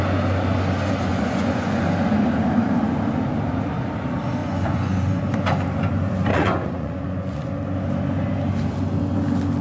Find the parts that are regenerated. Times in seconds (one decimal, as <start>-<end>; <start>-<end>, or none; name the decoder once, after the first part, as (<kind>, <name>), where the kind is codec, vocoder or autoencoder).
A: 1.1-1.8 (vocoder, Vocos); 4.4-5.2; 6.3-7.5